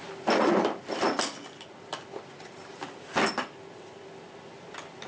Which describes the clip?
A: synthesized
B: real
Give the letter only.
B